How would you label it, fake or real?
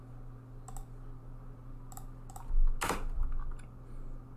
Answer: real